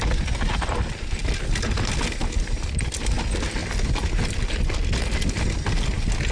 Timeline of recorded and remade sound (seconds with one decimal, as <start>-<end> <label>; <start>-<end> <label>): 0.0-6.3 recorded